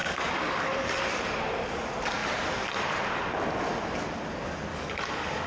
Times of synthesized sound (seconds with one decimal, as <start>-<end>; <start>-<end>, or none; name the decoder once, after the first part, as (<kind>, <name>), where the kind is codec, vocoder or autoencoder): 0.0-1.0 (codec, DAC); 4.7-5.5